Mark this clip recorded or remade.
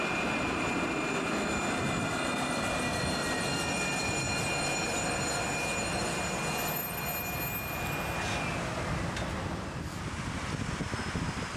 recorded